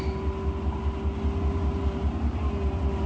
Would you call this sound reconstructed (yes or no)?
no